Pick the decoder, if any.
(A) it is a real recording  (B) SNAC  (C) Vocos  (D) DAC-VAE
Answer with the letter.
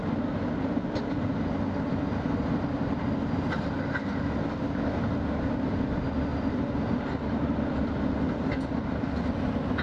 A